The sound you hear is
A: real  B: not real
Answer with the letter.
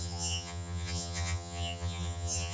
B